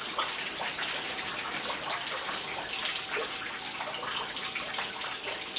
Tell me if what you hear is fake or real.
real